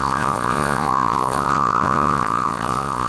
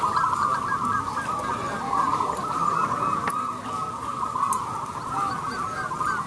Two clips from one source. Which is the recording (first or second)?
second